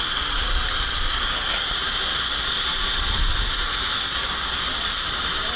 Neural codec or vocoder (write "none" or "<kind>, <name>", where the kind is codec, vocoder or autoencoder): none